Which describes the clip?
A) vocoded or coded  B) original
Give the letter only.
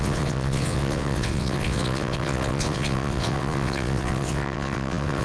A